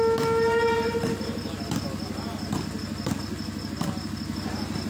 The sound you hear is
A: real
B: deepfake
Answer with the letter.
A